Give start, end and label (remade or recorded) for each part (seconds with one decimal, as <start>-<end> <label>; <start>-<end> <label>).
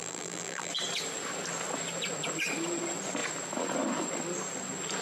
0.0-0.7 remade; 0.7-5.0 recorded